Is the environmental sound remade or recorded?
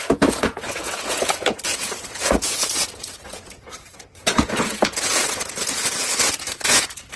remade